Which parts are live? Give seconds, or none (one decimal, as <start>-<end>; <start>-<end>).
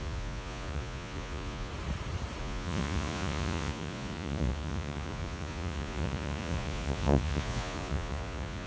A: 1.7-2.4